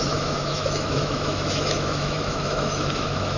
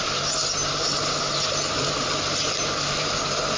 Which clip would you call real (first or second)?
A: second